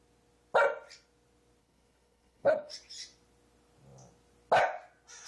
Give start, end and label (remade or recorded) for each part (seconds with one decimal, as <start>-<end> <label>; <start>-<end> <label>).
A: 0.0-1.6 recorded; 1.6-2.7 remade; 2.7-5.3 recorded